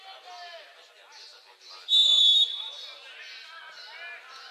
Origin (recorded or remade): recorded